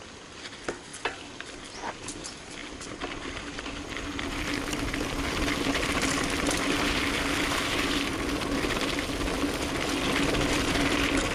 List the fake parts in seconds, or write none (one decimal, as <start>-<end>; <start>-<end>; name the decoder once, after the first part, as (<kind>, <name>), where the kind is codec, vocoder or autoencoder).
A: none